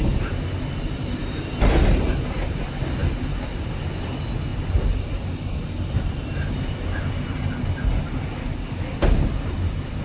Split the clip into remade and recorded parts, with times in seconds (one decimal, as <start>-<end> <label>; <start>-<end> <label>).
0.0-10.0 recorded